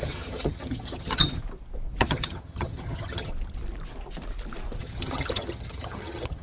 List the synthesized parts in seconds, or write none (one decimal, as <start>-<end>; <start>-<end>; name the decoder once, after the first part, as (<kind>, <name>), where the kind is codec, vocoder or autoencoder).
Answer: 0.0-1.4 (vocoder, HiFi-GAN); 2.0-3.3; 4.8-6.4